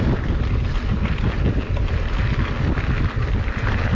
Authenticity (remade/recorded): recorded